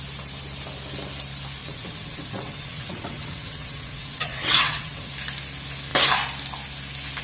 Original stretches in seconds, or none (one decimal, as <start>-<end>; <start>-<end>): 0.0-1.6; 5.1-7.2